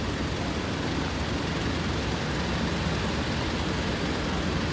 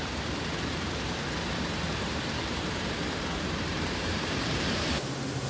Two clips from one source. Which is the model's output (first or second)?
second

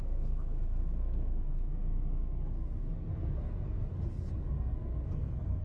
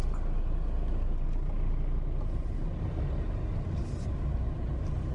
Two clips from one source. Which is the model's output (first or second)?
first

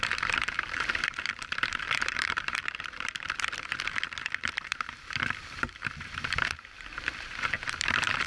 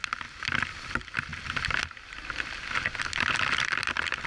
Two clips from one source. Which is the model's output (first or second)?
first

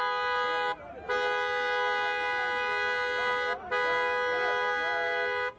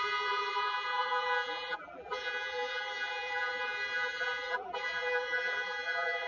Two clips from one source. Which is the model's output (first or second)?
second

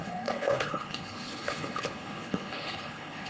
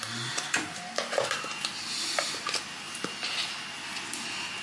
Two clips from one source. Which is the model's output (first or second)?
first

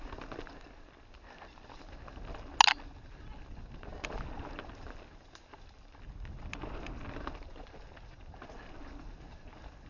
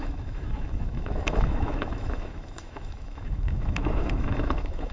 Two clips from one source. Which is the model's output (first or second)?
second